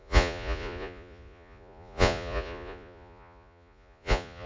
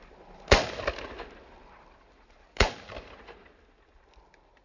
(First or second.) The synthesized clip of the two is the first